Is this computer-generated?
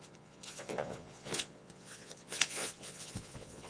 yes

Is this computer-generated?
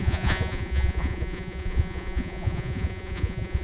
yes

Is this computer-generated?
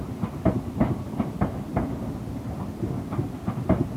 no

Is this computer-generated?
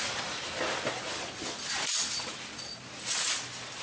no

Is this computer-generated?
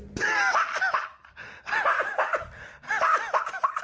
no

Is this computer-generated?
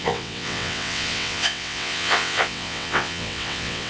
yes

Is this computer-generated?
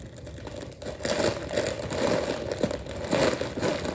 no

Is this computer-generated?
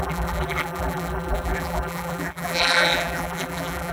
yes